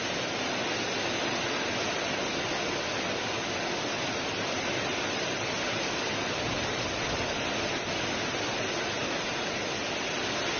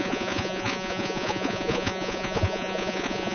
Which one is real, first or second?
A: first